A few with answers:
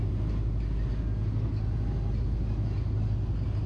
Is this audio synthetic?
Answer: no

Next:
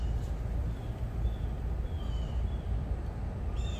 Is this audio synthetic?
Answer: no